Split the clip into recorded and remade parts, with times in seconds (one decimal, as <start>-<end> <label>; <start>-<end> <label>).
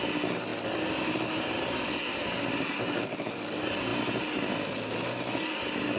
0.0-6.0 recorded